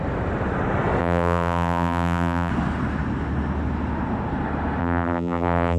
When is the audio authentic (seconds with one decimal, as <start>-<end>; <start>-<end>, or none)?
0.0-1.0; 2.5-4.8